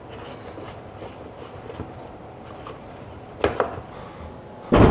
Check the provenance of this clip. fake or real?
real